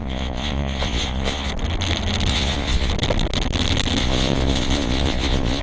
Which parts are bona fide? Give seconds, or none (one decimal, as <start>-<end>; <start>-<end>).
1.5-2.3; 2.9-4.0